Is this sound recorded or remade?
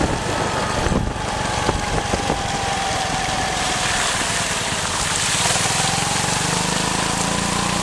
recorded